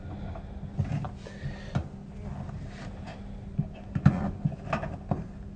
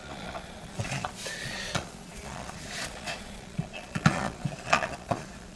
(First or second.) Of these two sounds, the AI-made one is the second